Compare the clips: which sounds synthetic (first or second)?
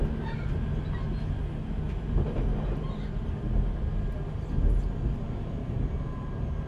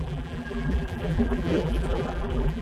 second